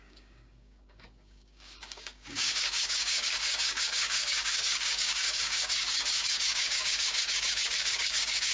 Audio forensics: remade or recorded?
remade